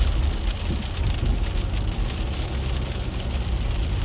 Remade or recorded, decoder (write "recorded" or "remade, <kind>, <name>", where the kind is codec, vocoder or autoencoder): recorded